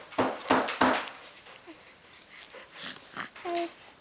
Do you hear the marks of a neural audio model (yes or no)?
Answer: no